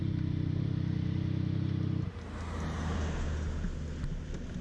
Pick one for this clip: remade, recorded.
recorded